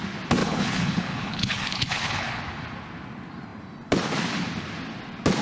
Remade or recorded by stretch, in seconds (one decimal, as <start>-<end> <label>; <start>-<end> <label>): 0.0-0.4 recorded; 0.4-2.4 remade; 2.4-5.4 recorded